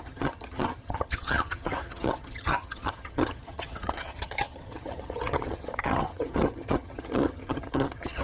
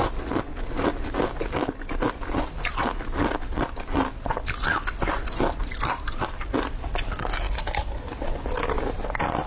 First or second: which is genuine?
second